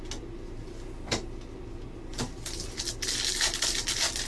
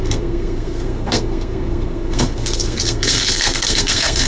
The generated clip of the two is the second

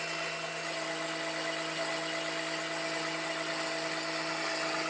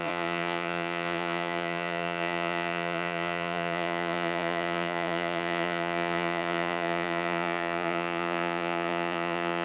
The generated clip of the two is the second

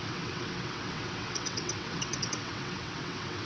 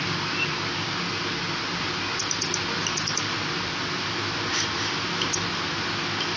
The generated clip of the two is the first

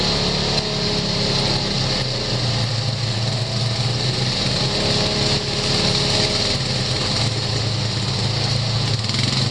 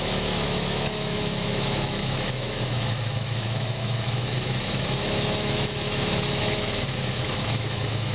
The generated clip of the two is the second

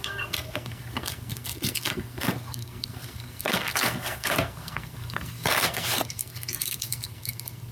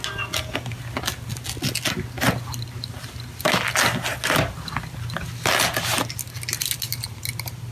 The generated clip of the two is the first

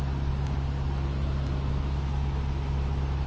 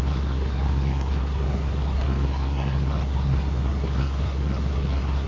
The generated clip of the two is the second